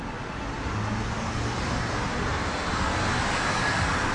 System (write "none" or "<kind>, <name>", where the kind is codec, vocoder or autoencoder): none